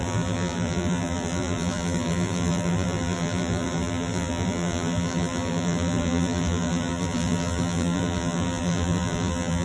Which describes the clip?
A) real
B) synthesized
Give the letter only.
B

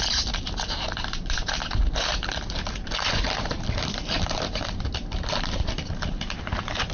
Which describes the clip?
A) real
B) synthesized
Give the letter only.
B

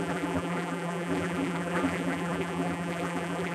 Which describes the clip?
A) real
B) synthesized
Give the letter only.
B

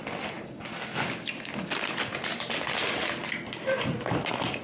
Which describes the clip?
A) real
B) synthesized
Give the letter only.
A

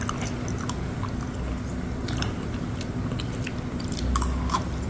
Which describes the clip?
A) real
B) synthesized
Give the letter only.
A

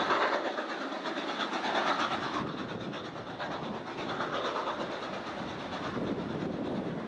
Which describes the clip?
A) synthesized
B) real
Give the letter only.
B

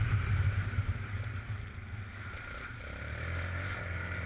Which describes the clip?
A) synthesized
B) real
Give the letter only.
A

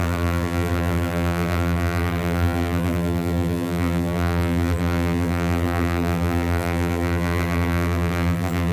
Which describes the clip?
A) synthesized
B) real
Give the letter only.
A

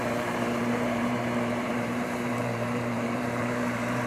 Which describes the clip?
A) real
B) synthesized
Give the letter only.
B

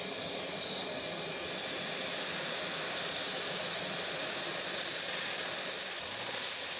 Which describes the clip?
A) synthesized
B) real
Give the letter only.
B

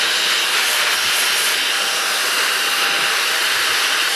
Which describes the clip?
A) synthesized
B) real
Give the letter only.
B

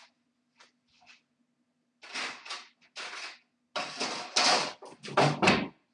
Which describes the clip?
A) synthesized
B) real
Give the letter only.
B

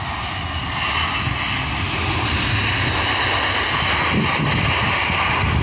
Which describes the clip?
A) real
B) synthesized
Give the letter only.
A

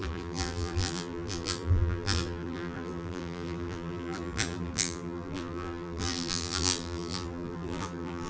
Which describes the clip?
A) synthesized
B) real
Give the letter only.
A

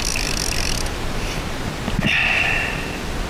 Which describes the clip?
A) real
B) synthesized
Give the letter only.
A